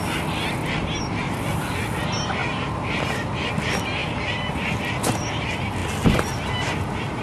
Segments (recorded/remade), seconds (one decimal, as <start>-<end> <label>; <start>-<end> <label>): 0.0-7.2 recorded